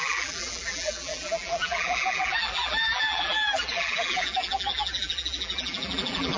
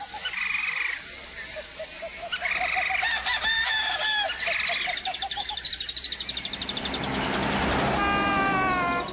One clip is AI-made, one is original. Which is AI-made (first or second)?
first